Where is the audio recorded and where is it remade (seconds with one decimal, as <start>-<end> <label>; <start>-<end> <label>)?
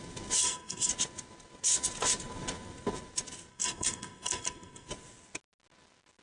0.0-0.4 recorded; 0.4-0.9 remade; 0.9-3.5 recorded; 3.5-4.9 remade; 4.9-6.2 recorded